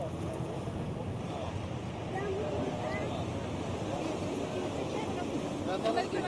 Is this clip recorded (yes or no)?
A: yes